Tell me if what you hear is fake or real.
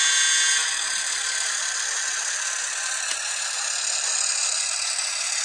real